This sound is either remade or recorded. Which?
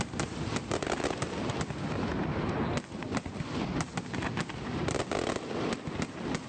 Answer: recorded